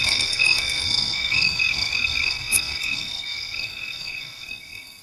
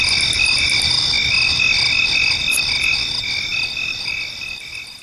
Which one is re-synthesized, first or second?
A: first